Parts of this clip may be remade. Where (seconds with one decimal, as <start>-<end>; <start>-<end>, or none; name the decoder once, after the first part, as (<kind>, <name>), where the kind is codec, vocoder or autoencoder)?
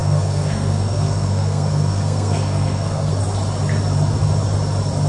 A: 0.0-3.1 (codec, SNAC)